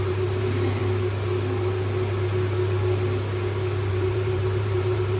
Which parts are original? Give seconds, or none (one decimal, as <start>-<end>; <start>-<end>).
0.8-3.9

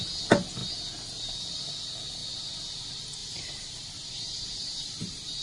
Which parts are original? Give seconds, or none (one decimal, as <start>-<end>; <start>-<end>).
0.0-3.2